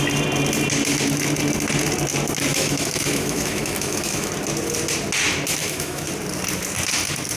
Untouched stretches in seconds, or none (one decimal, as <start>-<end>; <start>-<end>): 0.0-2.5; 4.3-5.6; 6.1-7.4